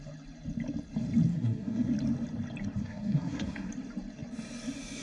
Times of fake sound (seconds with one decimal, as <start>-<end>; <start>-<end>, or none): 1.3-1.9; 2.8-3.7